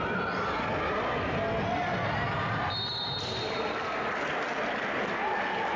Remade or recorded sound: recorded